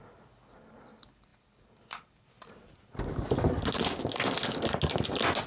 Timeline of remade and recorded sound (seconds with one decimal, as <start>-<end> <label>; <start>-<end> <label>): 0.0-5.5 recorded